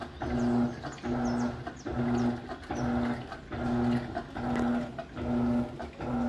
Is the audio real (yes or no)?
yes